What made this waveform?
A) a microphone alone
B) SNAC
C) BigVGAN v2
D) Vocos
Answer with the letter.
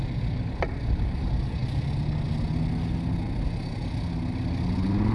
A